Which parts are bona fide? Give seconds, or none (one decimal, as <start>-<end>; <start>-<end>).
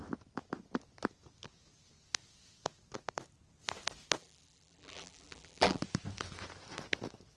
0.0-4.2; 5.8-7.4